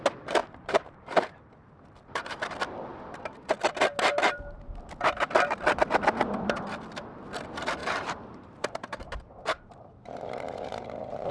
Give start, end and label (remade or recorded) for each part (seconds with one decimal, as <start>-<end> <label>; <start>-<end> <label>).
0.0-0.4 recorded; 0.4-2.5 remade; 2.5-7.8 recorded; 7.8-11.3 remade